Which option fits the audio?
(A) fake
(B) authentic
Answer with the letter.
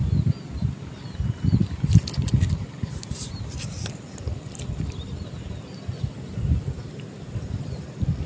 B